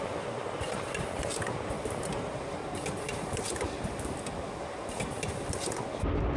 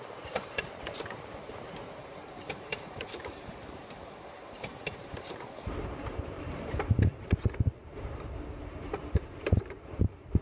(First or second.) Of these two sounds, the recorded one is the first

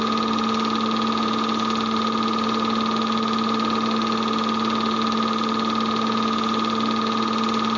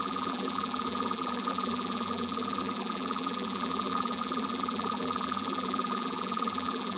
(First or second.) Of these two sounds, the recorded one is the first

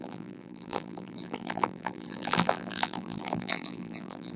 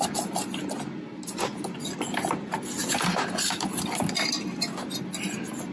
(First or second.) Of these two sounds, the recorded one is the second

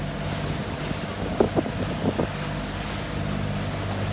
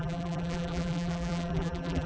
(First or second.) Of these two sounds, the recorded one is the first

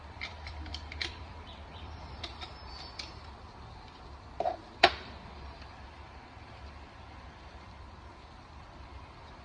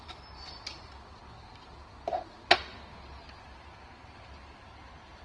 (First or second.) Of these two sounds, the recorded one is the second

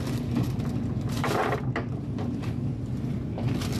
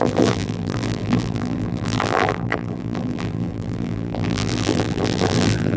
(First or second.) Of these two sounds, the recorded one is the first